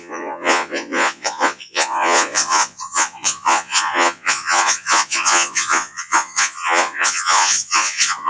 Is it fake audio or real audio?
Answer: fake